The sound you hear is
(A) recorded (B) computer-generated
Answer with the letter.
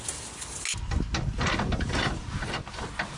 A